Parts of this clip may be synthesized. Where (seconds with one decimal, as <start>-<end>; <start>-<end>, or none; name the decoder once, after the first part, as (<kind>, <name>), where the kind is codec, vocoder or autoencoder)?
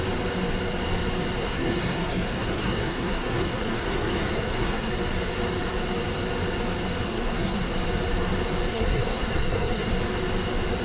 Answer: 1.4-4.9 (codec, SNAC); 7.1-7.7; 8.7-9.9